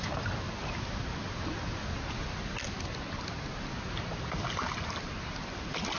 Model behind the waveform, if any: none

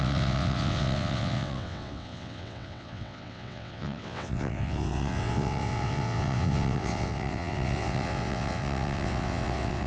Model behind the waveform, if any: vocoder, WaveNeXt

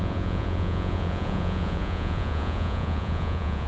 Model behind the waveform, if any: vocoder, Vocos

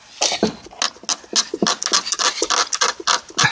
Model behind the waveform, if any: none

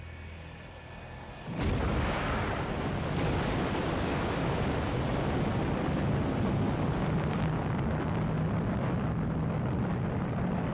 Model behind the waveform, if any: none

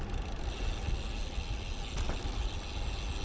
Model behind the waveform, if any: none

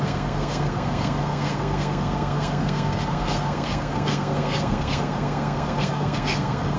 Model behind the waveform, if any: codec, SNAC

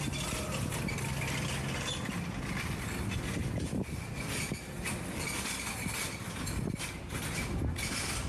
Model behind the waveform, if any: none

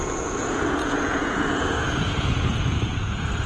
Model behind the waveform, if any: vocoder, Vocos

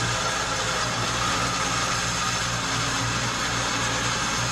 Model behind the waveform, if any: none